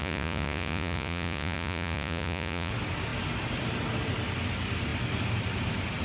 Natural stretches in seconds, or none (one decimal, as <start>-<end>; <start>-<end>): 2.7-6.0